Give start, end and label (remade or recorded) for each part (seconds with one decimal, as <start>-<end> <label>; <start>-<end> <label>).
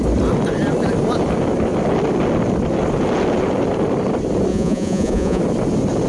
0.0-4.5 recorded; 4.5-5.4 remade; 5.4-6.1 recorded